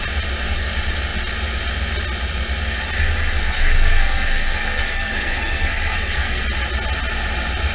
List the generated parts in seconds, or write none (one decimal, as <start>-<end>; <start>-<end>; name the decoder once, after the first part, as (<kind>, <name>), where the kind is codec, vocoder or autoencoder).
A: 3.4-6.4 (codec, SNAC)